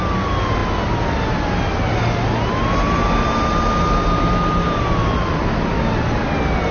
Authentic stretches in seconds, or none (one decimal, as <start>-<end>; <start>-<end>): 0.0-6.7